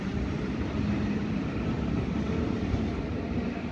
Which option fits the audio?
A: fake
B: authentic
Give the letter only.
A